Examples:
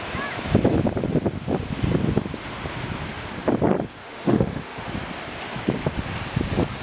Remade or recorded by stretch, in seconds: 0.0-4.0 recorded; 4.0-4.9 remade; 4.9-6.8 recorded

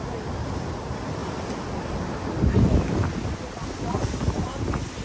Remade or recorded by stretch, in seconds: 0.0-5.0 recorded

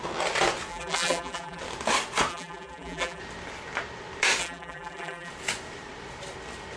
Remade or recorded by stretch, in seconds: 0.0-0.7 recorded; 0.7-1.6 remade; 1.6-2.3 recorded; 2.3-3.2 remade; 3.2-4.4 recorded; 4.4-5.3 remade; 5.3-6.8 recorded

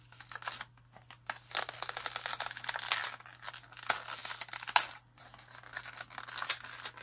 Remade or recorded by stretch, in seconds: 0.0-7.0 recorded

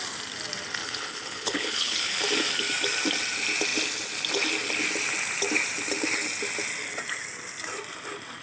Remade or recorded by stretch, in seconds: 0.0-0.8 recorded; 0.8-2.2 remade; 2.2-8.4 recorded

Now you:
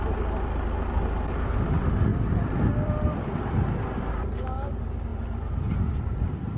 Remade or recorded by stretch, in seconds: 0.0-2.1 recorded; 2.1-3.5 remade; 3.5-6.6 recorded

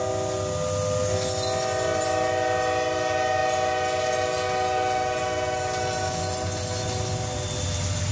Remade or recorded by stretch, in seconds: 0.0-8.1 recorded